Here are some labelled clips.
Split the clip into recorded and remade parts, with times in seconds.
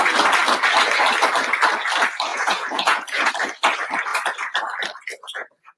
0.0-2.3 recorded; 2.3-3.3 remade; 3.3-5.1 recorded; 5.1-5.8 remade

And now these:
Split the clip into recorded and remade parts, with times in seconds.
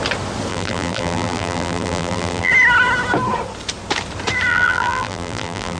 0.0-0.5 recorded; 0.5-2.5 remade; 2.5-4.5 recorded; 4.5-5.8 remade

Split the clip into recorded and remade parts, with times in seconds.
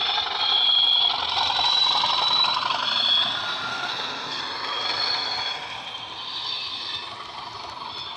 0.0-3.7 recorded; 3.7-4.4 remade; 4.4-8.2 recorded